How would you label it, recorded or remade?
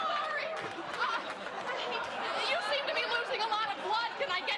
recorded